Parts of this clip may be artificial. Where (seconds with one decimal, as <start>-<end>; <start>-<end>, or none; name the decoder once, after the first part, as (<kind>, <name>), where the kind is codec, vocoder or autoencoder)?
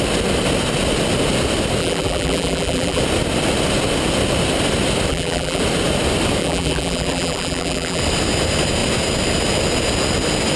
1.8-3.0 (vocoder, BigVGAN v2); 5.1-5.6; 6.4-8.0